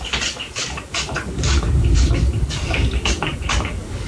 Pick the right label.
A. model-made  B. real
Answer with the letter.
A